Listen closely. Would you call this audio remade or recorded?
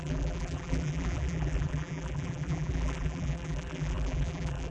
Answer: remade